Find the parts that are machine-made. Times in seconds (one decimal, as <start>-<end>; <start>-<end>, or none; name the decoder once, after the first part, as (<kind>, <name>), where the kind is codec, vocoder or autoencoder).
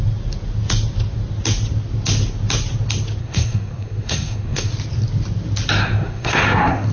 3.2-4.7 (codec, SNAC); 5.8-6.9